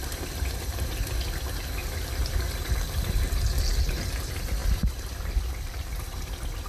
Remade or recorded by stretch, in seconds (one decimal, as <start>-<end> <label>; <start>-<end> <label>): 0.0-6.7 recorded